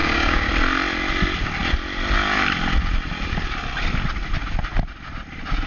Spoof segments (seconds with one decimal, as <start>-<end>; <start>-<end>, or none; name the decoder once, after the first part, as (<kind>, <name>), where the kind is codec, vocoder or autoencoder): 0.0-0.5 (codec, DAC)